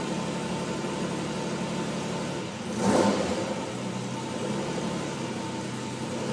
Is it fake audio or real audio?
real